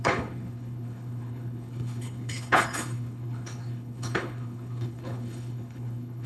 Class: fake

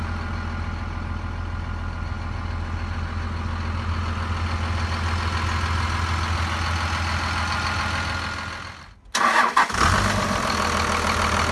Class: real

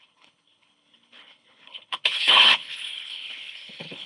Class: fake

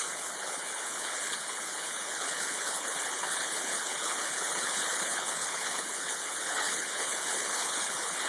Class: fake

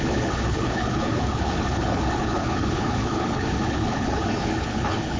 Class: fake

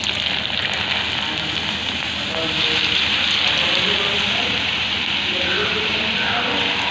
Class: real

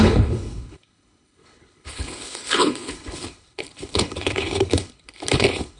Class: fake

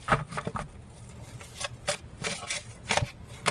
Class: real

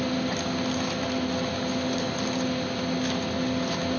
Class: real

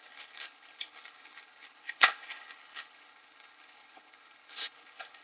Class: fake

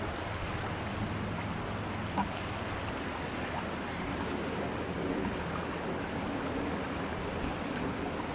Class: real